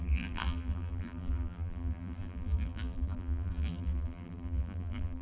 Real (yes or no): no